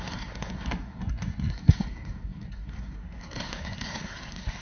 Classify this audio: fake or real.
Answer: fake